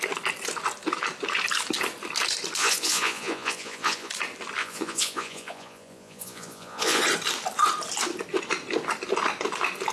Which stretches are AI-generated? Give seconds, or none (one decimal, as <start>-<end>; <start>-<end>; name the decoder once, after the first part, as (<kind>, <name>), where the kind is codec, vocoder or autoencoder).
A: 2.6-4.1 (vocoder, Vocos); 4.6-7.0